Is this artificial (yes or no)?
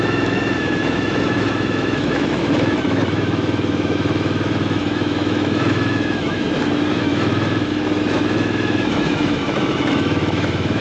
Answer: yes